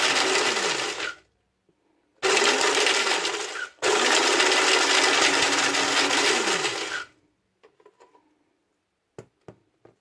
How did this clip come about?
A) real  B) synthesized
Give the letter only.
A